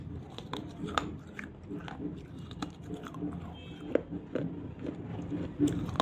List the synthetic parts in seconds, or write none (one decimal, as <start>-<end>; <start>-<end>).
none